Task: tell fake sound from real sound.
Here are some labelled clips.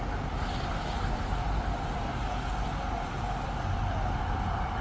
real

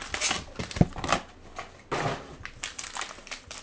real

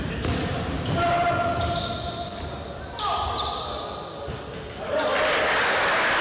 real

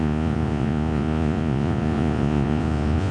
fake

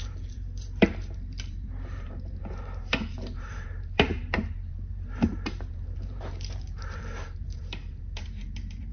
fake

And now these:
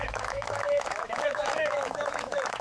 fake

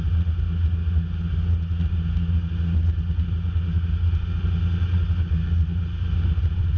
real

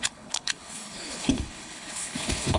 fake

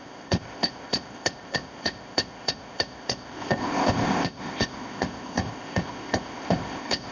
fake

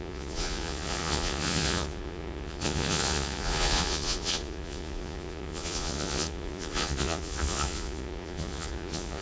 fake